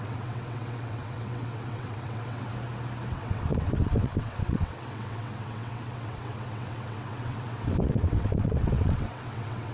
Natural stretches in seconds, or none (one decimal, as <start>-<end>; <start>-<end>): 2.5-3.1